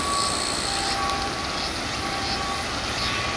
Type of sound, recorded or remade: recorded